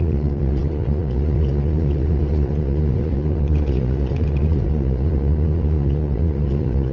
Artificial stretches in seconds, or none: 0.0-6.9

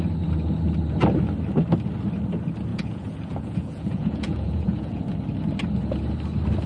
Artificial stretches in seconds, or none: 2.7-5.0

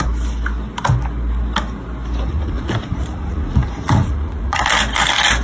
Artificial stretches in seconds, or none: 2.3-4.6

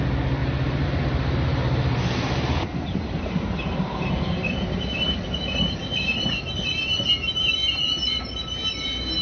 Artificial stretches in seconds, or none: 0.4-4.2

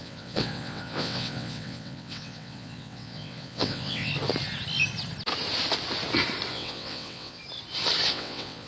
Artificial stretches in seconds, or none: 0.0-4.1; 6.5-7.4; 8.1-8.7

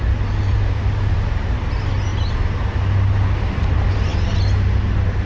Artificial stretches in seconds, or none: none

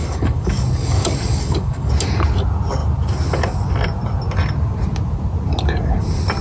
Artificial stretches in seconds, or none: 0.0-1.9

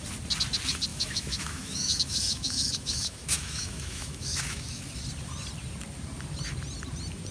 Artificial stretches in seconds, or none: 0.9-4.8